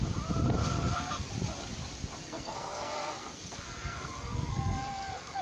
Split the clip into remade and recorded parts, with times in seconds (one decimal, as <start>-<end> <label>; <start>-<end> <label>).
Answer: 0.0-0.6 recorded; 0.6-1.3 remade; 1.3-2.2 recorded; 2.2-5.4 remade